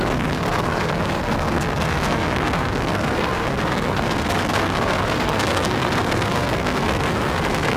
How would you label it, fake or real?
fake